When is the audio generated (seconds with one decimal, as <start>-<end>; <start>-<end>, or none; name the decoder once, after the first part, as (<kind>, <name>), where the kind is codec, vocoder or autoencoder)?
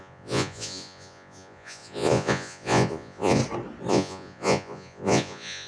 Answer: 0.0-3.4 (vocoder, Vocos); 3.9-5.7